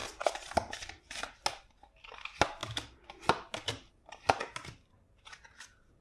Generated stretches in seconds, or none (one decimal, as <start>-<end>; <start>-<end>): none